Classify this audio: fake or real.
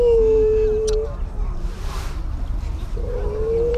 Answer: real